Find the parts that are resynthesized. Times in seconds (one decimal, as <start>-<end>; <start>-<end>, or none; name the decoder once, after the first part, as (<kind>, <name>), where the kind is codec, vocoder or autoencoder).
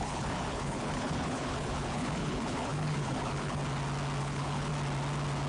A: 0.0-3.6 (codec, HILCodec); 4.2-4.7